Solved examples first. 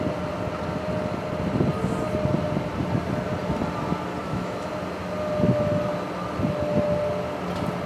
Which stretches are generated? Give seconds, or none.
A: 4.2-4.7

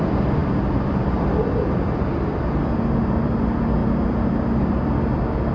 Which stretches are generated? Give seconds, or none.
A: none

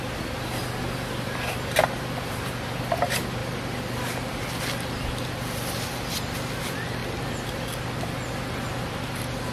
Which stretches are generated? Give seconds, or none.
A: 3.4-6.1; 7.0-7.8

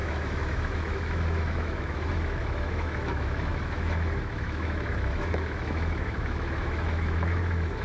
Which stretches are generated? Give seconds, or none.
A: 0.0-7.8

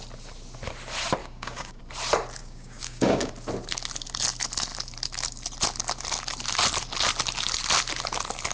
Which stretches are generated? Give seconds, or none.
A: 1.2-1.8; 2.4-3.3

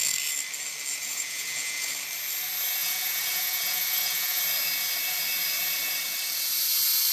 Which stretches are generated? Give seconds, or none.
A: 0.9-1.9; 2.8-4.4